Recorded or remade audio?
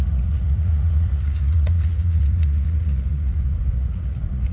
remade